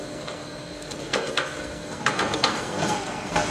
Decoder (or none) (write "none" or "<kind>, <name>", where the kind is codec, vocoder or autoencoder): codec, SNAC